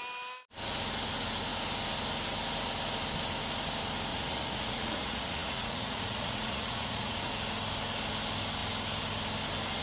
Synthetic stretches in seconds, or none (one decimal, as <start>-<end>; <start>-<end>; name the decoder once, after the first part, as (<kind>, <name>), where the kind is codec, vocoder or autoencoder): 4.1-7.3 (vocoder, Vocos)